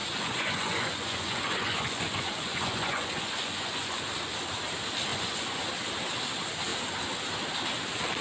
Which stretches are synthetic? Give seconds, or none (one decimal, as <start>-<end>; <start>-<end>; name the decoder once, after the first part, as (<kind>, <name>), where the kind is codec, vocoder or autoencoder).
0.0-4.0 (vocoder, Vocos); 5.1-5.6